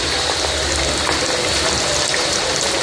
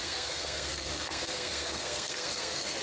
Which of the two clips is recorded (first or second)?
first